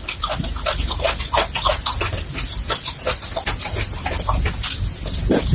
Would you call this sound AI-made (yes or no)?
no